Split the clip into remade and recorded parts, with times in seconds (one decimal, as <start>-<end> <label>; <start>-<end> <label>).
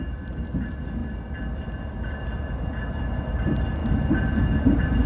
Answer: 0.0-5.1 recorded